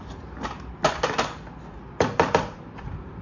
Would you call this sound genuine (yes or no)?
yes